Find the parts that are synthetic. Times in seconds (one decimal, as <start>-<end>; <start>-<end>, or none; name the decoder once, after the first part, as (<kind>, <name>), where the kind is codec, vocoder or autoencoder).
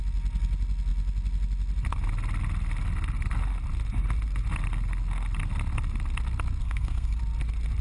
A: 6.6-7.2 (codec, SNAC)